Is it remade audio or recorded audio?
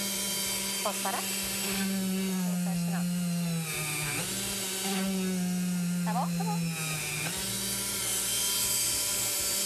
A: recorded